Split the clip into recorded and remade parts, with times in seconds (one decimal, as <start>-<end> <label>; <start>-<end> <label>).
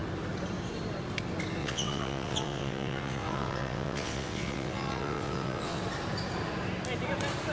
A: 0.0-1.6 recorded; 1.6-5.8 remade; 5.8-7.5 recorded